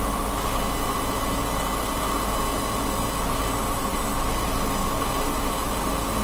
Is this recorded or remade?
recorded